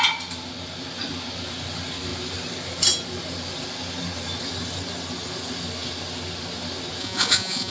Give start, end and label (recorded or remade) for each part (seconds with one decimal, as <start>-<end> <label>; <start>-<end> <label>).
0.0-7.0 recorded; 7.0-7.7 remade

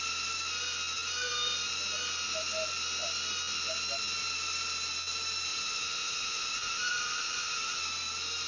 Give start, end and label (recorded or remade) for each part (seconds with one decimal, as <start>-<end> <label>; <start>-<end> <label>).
0.0-5.5 recorded; 5.5-7.8 remade; 7.8-8.5 recorded

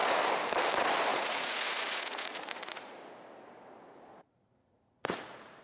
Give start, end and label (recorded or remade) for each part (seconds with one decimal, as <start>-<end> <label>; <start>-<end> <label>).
0.0-1.1 recorded; 1.1-2.9 remade; 2.9-4.1 recorded; 4.1-5.6 remade

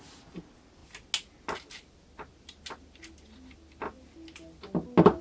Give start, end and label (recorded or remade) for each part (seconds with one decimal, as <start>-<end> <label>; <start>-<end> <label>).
0.0-5.2 recorded

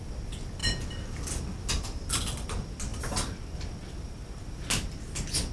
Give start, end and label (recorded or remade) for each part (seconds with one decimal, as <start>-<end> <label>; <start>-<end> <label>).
0.0-5.5 recorded

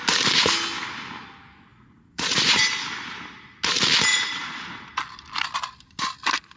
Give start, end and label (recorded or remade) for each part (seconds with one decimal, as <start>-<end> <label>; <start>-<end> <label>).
0.0-1.7 recorded; 1.7-2.6 remade; 2.6-4.1 recorded; 4.1-4.9 remade; 4.9-6.6 recorded

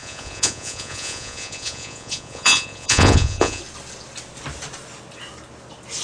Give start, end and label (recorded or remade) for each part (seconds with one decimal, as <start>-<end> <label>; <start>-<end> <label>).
0.0-3.6 remade; 3.6-6.0 recorded

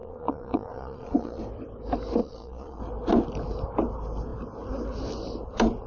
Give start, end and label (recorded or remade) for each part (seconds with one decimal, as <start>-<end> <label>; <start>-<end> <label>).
0.0-1.4 remade; 1.4-2.2 recorded; 2.2-2.8 remade; 2.8-5.9 recorded